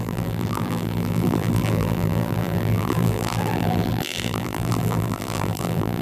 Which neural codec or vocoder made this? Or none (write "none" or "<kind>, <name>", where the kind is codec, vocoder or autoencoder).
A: vocoder, BigVGAN v2